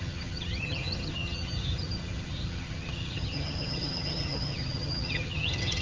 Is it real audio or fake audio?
fake